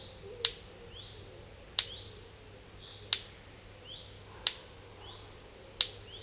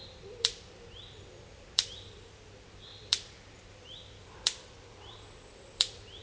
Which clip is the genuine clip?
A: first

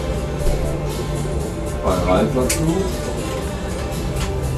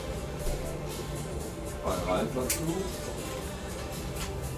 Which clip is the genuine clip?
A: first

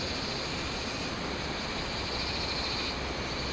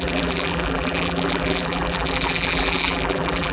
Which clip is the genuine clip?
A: first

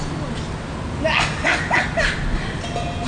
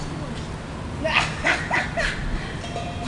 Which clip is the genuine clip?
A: first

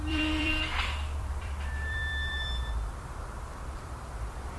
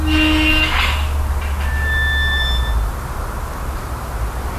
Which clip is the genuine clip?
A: second